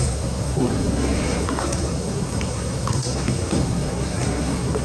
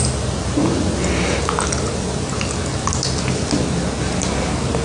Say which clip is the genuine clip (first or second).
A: second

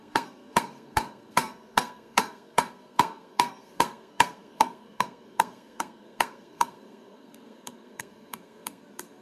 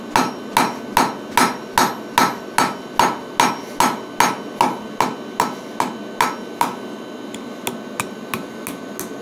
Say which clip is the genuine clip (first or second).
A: second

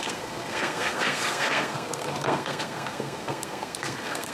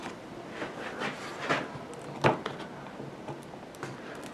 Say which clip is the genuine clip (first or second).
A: second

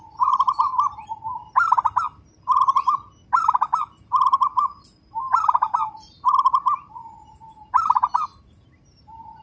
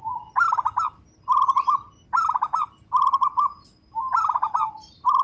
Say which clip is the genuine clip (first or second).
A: second